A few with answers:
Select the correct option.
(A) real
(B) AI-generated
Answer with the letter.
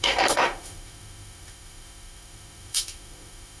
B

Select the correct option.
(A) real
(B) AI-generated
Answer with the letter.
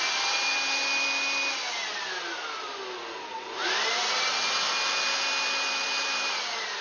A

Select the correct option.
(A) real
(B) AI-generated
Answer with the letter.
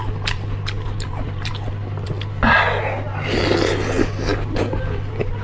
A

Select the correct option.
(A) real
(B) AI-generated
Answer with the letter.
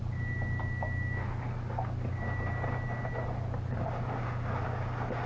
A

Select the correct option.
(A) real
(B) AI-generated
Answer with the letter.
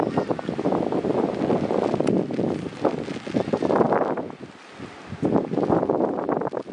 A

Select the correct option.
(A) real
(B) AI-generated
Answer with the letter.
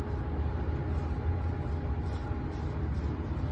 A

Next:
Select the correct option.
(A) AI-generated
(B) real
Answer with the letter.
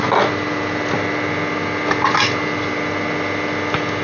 B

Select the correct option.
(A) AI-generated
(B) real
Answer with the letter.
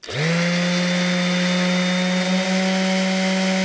B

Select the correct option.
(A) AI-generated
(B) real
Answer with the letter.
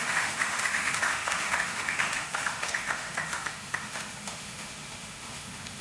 A